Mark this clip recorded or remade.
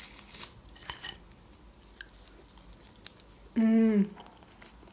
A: recorded